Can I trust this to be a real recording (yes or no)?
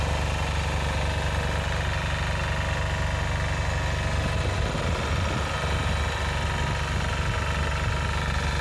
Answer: yes